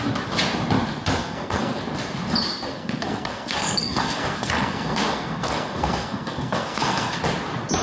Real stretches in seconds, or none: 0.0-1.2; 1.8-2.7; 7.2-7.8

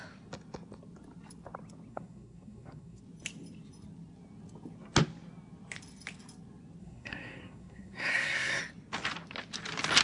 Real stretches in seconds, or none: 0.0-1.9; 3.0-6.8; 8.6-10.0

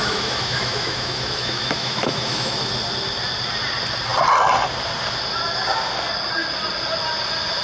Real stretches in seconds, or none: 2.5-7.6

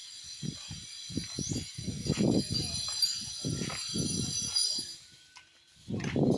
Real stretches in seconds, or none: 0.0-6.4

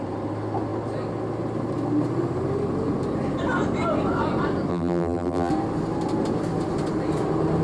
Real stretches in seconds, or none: 0.0-4.7; 5.5-7.6

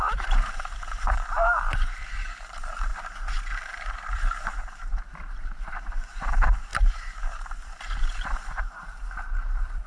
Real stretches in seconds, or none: 2.9-3.9